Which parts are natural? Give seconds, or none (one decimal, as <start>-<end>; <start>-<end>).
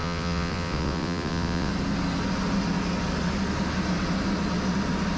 1.7-5.2